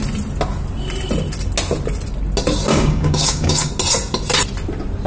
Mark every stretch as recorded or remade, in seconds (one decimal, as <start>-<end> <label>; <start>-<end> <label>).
0.0-2.7 recorded; 2.7-3.7 remade; 3.7-5.1 recorded